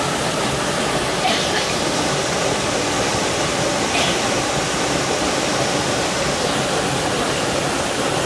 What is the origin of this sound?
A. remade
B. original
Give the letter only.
B